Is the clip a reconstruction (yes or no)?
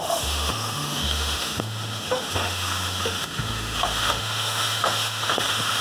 yes